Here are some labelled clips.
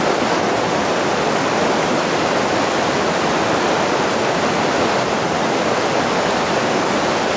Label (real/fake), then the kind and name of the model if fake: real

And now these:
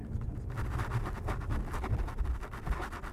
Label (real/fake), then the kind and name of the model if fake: real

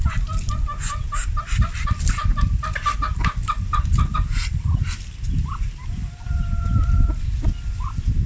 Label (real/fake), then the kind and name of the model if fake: real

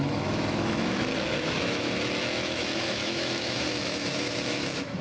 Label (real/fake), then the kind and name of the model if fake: fake, autoencoder, DAC-VAE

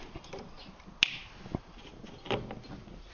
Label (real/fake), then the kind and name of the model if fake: real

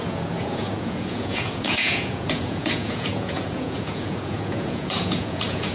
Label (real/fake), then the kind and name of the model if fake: fake, vocoder, Vocos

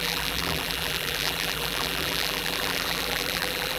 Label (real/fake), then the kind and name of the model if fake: fake, vocoder, BigVGAN v2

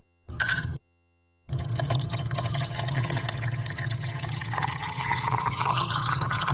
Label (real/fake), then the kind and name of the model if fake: fake, vocoder, HiFi-GAN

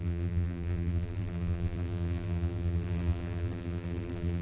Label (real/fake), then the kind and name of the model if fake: fake, vocoder, BigVGAN v2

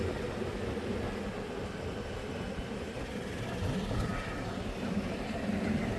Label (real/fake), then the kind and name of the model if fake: real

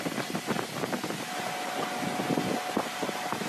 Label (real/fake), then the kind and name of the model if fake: real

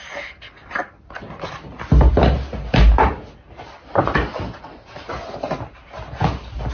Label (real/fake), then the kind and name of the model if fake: real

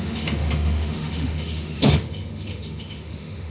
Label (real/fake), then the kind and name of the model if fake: fake, autoencoder, DAC-VAE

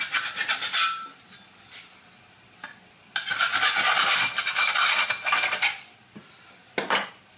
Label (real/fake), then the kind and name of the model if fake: real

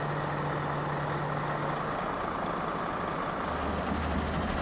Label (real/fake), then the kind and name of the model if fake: real